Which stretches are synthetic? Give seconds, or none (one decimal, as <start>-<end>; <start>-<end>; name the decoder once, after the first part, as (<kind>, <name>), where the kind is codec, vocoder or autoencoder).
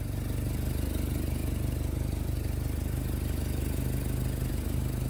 none